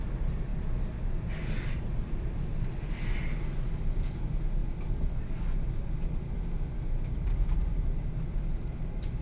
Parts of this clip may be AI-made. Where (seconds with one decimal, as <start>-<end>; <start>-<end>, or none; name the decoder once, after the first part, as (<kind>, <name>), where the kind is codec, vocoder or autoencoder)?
none